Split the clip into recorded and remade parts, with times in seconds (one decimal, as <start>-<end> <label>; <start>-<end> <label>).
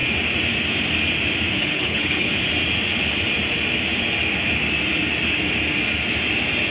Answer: 0.0-1.6 recorded; 1.6-2.3 remade; 2.3-6.7 recorded